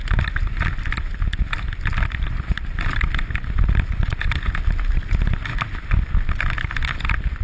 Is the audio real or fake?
real